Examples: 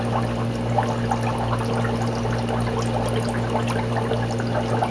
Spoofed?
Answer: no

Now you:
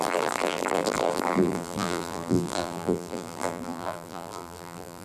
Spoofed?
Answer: yes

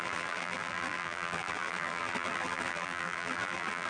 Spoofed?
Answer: yes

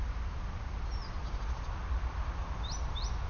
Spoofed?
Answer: no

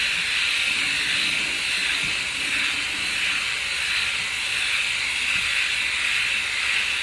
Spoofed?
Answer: no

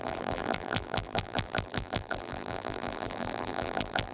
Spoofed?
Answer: yes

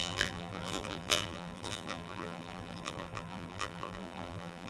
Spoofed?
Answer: yes